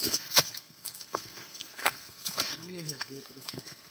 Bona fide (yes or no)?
no